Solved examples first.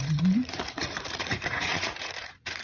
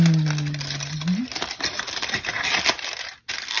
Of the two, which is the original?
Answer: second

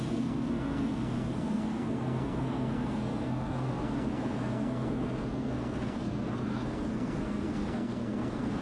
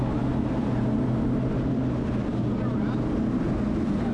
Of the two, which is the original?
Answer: second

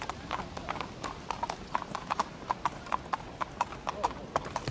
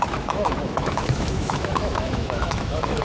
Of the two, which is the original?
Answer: first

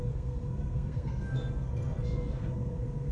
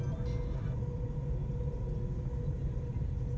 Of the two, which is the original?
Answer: second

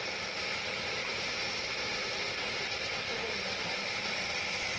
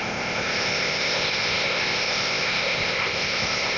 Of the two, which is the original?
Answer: first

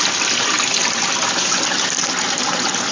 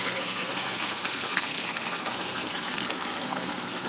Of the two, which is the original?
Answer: first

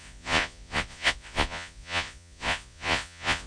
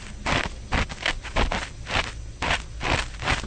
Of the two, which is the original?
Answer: second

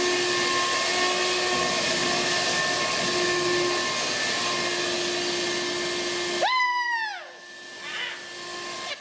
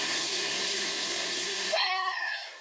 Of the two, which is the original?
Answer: first